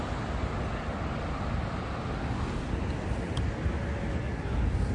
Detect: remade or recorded recorded